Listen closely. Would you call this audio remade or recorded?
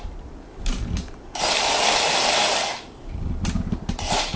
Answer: remade